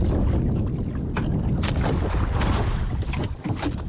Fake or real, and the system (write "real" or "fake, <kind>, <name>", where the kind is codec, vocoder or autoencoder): real